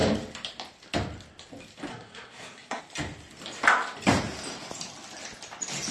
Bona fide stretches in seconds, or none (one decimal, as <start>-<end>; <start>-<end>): 0.0-1.9; 2.8-5.9

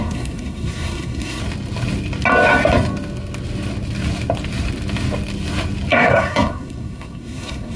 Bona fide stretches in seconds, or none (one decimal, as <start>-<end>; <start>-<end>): 1.4-5.9